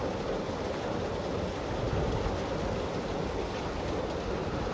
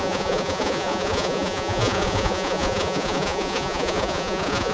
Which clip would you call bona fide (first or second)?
first